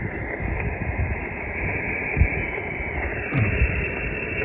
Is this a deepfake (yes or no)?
no